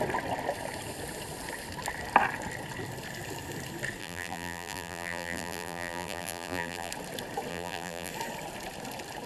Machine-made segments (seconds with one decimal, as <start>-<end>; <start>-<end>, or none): 4.0-6.9; 7.5-8.1